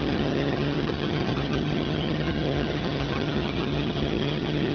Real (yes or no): no